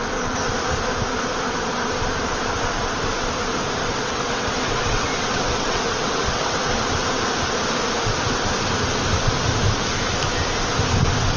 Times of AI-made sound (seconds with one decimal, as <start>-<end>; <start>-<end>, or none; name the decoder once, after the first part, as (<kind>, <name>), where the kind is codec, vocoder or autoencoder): 3.9-6.7 (vocoder, WaveNeXt)